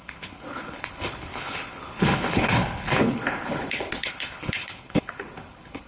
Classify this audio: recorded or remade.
remade